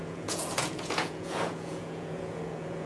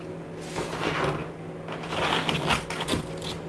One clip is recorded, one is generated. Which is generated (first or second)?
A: first